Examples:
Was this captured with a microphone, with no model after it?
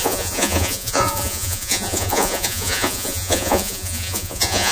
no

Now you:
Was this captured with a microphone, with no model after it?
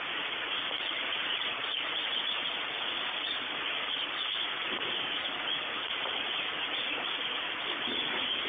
no